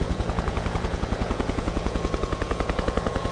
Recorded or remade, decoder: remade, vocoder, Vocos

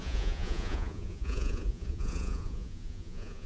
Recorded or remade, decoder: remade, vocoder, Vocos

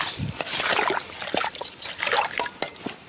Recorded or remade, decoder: recorded